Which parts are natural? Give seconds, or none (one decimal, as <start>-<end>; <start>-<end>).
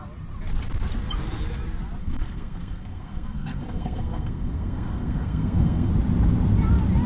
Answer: 0.0-2.0; 5.9-7.1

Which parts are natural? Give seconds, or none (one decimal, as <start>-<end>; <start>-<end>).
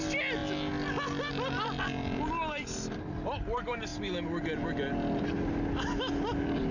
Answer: 0.0-6.7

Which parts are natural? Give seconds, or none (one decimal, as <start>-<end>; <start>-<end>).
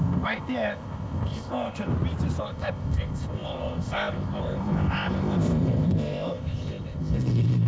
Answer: 1.9-2.4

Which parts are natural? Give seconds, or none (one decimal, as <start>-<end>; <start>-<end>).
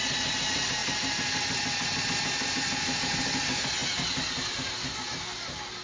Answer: 0.0-5.8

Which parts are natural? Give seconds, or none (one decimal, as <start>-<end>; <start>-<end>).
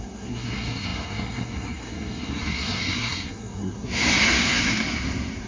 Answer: none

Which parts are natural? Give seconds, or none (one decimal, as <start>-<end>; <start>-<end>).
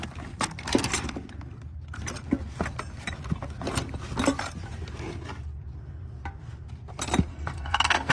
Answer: 0.0-7.3